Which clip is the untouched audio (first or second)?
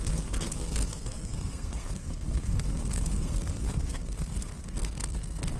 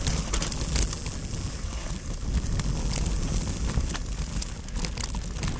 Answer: second